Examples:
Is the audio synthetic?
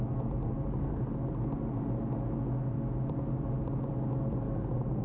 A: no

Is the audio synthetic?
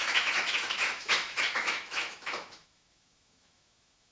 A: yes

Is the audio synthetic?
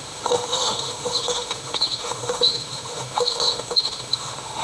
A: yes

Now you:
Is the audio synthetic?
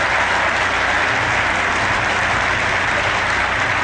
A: no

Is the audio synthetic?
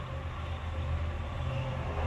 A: no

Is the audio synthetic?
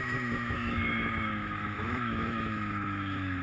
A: yes